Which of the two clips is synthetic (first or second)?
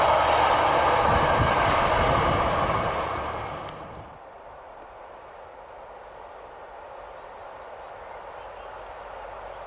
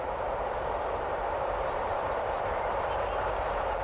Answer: second